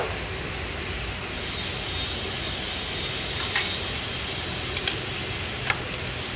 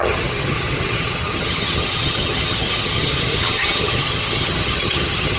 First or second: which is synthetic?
second